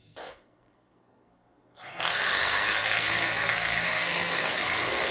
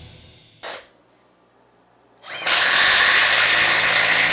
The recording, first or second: second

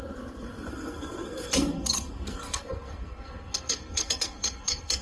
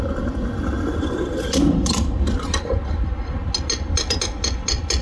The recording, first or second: second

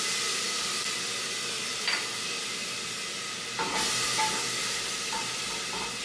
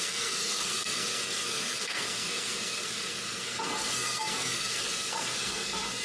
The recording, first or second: first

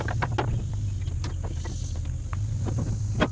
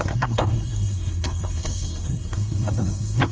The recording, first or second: first